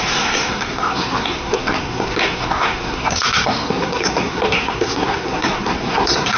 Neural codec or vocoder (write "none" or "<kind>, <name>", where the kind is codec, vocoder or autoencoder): codec, SNAC